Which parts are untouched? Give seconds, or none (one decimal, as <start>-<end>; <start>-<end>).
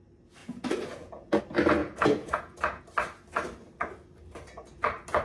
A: 0.0-0.4; 1.4-1.8; 2.8-5.2